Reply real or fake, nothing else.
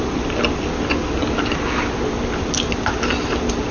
real